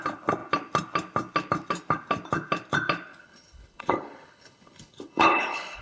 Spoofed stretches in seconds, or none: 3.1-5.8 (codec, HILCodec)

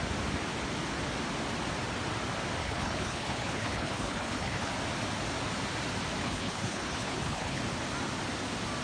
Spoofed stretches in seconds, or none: 2.6-4.7 (codec, HILCodec); 6.2-7.6